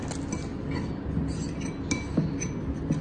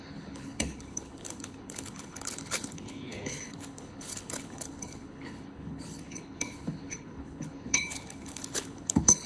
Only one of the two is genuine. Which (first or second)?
first